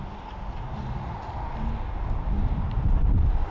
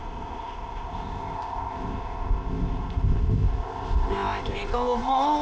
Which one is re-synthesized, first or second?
second